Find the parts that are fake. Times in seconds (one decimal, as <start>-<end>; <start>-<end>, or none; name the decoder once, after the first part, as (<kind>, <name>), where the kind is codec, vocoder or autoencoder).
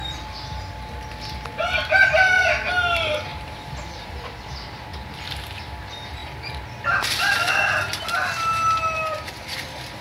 3.3-4.2 (vocoder, BigVGAN v2)